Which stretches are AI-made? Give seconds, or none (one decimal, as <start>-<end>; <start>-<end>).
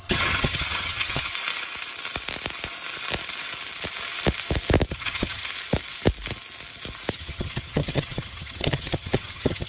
0.0-1.3; 4.9-5.4; 7.1-9.7